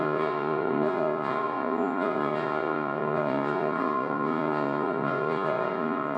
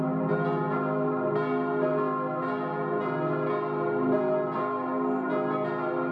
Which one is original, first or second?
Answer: second